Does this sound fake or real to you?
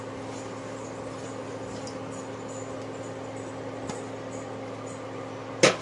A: real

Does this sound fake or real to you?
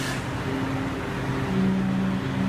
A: real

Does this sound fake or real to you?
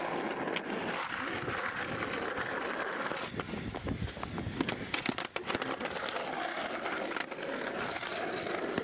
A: real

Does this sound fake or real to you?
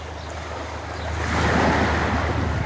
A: real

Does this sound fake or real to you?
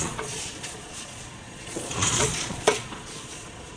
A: fake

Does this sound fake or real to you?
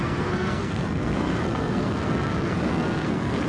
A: fake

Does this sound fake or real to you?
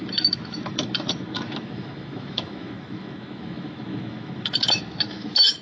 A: fake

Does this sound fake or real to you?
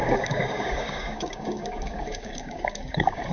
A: fake